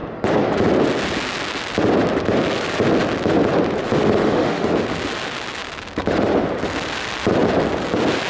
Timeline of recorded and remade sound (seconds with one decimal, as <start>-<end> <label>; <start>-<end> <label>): 0.0-4.2 recorded; 4.2-4.7 remade; 4.7-8.3 recorded